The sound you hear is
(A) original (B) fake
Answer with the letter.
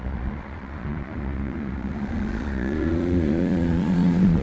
B